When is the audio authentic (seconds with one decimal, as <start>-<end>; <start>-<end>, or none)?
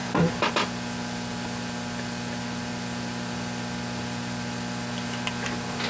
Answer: 0.5-5.9